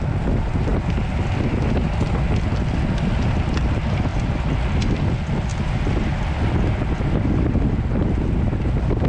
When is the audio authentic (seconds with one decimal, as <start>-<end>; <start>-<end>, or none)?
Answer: 0.0-9.1